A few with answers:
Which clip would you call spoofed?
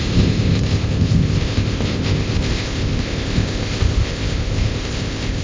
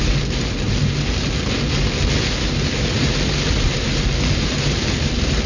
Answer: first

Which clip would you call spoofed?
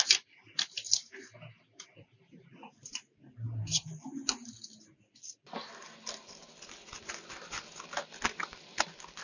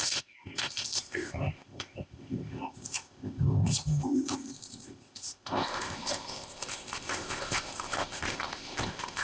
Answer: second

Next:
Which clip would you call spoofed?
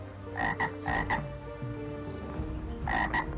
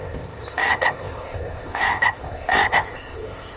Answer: second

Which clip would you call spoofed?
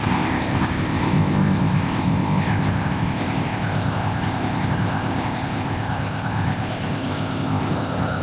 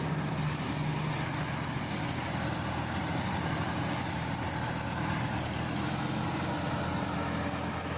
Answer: first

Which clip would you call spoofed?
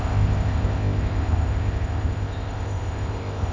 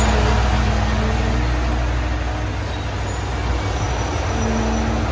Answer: first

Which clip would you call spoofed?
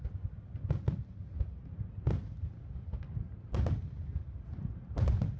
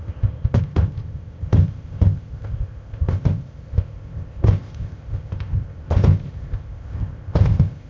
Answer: second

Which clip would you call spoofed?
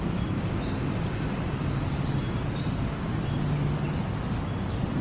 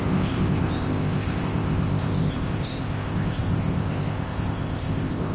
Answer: second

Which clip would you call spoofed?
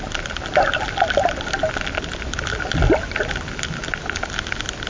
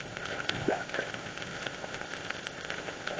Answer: second